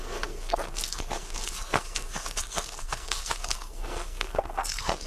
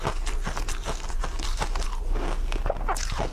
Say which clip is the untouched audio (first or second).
second